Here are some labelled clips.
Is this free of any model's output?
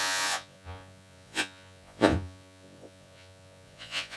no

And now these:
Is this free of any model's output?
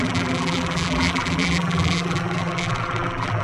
no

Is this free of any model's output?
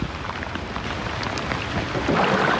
yes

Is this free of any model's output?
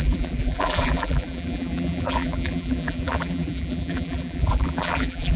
no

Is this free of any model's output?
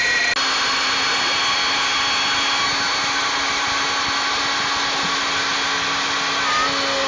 yes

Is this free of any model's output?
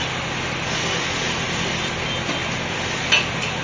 yes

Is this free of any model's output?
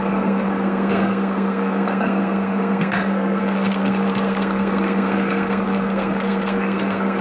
no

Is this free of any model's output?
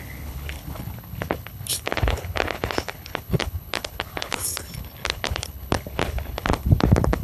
no